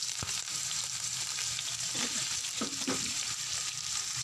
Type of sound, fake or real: fake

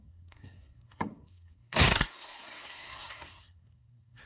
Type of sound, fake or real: fake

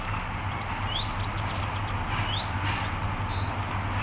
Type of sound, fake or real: real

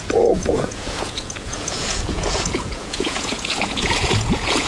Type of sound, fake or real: fake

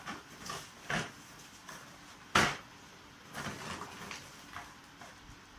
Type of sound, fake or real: real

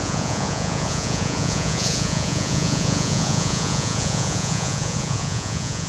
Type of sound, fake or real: fake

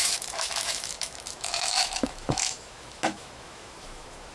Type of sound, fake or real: fake